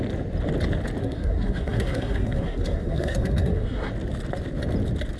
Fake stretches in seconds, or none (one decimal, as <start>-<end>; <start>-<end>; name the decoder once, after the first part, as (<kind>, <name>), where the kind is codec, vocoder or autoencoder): 1.0-3.9 (codec, SNAC)